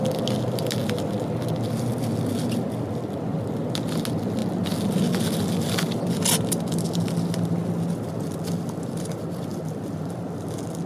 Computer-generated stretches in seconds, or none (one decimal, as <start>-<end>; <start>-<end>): none